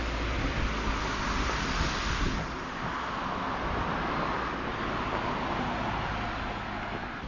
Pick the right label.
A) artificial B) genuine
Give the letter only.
B